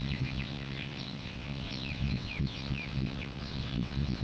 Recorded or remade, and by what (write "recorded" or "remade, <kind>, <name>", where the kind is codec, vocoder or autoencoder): remade, vocoder, WaveNeXt